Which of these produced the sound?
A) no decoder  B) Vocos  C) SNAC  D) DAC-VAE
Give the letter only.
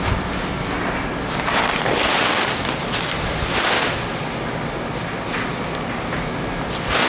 A